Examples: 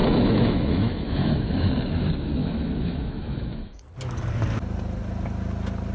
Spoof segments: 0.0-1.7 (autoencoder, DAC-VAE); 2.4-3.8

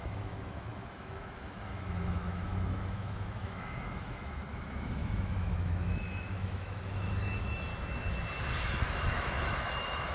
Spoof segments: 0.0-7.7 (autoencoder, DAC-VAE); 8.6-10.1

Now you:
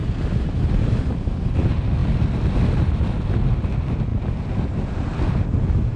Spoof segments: none

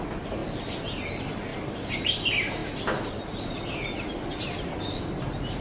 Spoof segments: none

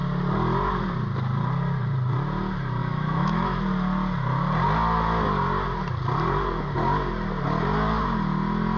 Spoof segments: 2.8-3.6 (autoencoder, DAC-VAE)